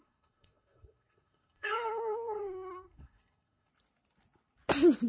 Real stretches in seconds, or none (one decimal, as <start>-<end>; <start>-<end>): 3.7-5.1